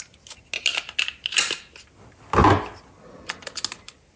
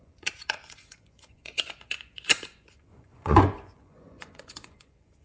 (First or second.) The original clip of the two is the first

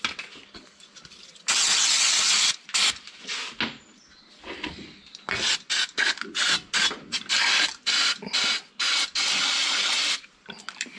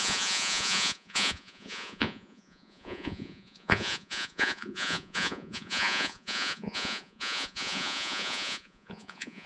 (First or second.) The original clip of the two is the first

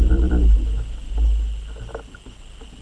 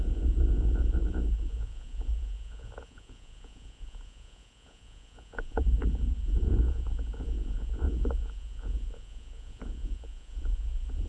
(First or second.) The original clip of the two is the first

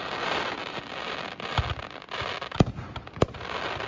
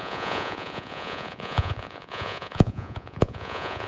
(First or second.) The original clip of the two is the first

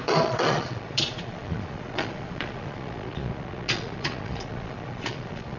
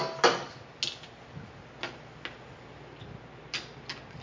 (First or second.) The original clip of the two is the second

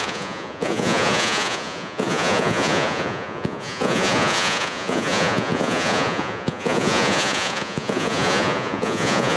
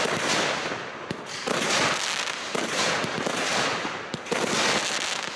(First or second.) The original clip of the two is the second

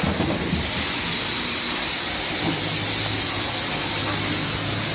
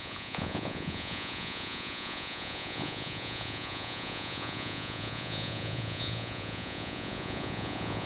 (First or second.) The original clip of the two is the first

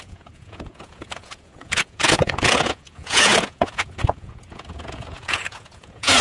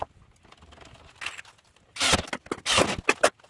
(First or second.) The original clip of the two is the second